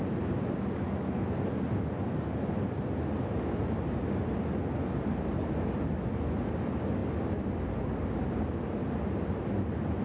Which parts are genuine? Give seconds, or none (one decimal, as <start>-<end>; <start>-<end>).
0.0-10.0